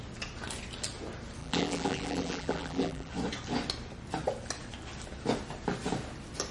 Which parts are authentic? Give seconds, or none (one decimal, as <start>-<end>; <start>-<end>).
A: 0.0-1.4; 3.1-6.5